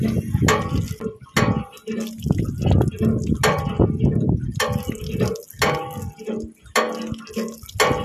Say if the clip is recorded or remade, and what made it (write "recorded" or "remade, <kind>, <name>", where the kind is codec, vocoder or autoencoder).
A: recorded